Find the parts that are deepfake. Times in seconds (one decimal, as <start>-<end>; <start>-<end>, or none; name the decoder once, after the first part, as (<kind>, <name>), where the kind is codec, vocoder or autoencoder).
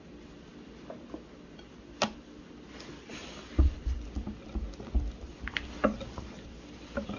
none